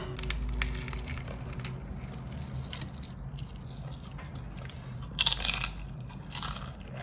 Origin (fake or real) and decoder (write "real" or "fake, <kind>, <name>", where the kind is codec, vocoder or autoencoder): real